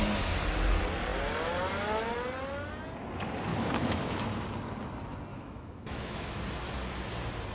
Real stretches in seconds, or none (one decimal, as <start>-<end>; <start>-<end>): 0.0-3.5; 4.3-5.3; 6.4-7.5